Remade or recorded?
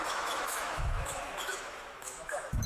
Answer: remade